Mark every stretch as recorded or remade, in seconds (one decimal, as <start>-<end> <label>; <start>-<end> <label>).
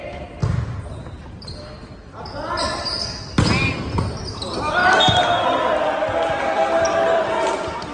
0.0-0.4 remade; 0.4-1.3 recorded; 1.3-4.8 remade; 4.8-6.4 recorded; 6.4-7.9 remade